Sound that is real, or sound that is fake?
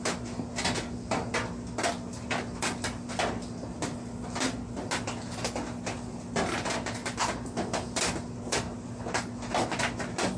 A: real